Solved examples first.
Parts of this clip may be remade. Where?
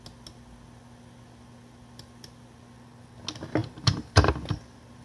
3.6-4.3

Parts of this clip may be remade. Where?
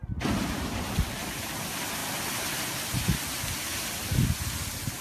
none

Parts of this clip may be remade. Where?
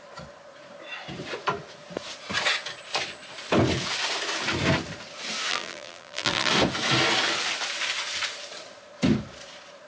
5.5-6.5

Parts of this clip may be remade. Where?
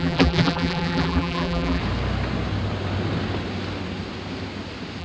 0.0-1.8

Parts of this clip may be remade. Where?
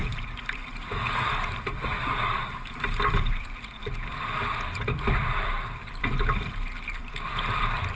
0.0-7.9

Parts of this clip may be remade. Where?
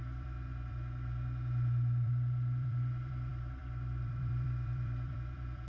0.0-5.7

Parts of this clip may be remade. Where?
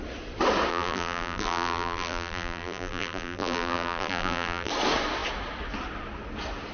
0.7-4.7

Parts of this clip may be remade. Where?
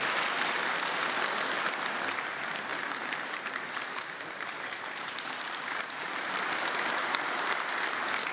2.7-7.7